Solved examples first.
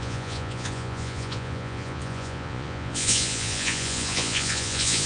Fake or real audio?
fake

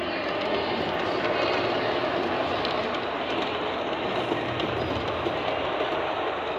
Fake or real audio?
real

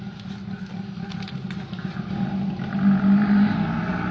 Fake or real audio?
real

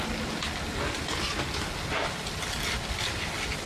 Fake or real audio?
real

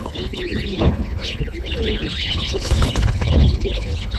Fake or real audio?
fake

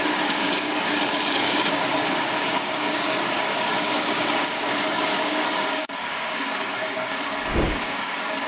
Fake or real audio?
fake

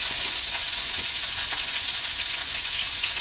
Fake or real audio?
fake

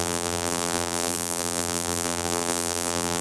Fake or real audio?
fake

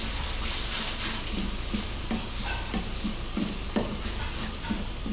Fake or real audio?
real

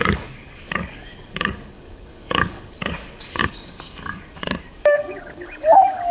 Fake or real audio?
fake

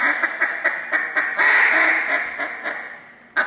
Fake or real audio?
real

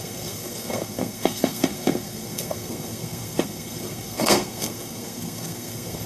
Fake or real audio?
fake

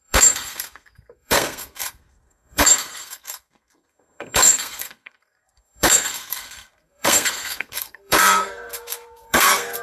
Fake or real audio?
fake